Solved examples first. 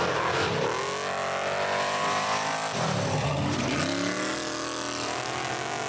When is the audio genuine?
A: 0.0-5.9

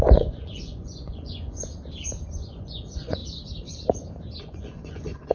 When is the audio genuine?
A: 1.7-2.3; 3.2-4.4

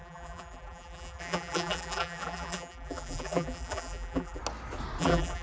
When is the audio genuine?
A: 4.4-5.0

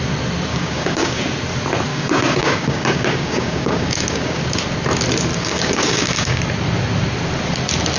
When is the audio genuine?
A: 0.0-0.5; 1.2-1.9; 4.4-5.3; 6.4-8.0

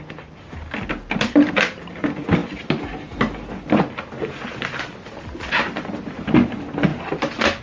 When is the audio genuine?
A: 0.0-7.6

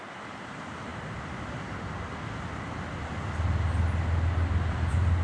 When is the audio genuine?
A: 0.0-5.2

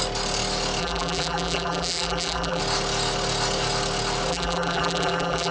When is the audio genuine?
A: 0.0-0.8; 2.6-4.3

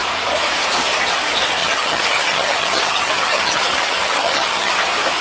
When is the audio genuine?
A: 0.0-1.6; 4.7-5.2